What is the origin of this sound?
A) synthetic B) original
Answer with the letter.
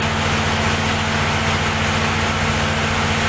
B